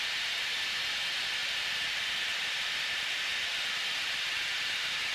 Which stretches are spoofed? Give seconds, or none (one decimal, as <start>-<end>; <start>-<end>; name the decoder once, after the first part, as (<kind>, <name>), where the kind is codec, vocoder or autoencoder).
1.4-2.9 (vocoder, BigVGAN v2); 3.3-5.1